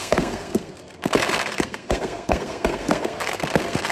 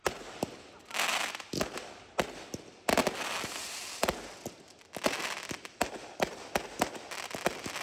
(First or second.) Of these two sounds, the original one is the second